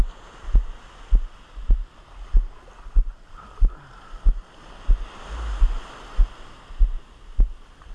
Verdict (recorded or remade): recorded